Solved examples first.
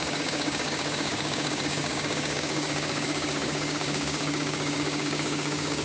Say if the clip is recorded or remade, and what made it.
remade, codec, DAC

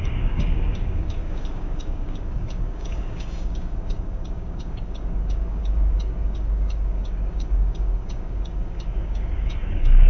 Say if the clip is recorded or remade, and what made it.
remade, codec, DAC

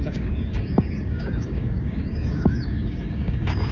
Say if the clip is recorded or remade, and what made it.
remade, codec, DAC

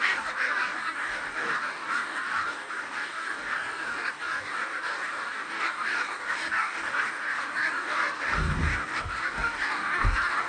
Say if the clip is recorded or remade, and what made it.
remade, codec, DAC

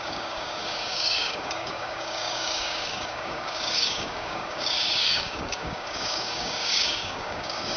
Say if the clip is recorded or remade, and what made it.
remade, codec, DAC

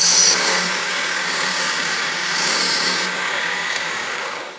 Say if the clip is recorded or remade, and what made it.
remade, codec, DAC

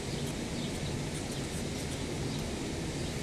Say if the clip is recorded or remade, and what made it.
recorded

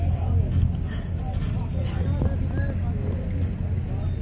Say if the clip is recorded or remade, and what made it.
recorded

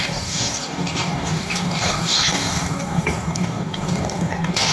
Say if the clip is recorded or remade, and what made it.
remade, codec, DAC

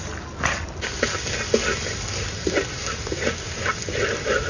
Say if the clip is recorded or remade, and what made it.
recorded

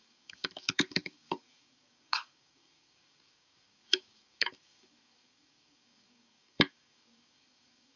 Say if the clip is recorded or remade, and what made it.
remade, codec, DAC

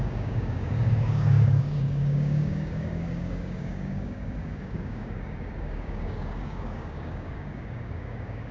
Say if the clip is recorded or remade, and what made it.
remade, codec, DAC